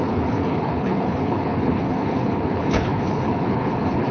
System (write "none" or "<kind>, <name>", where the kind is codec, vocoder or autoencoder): codec, HILCodec